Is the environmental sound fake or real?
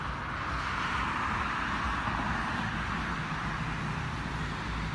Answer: real